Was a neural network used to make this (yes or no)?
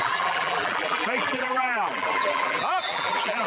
yes